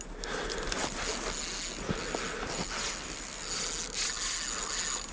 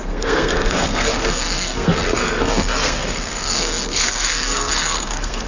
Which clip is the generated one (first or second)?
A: second